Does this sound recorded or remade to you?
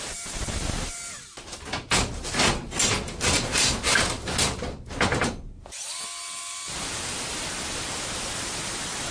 recorded